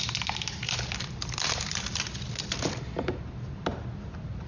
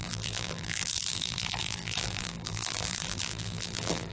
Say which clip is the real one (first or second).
first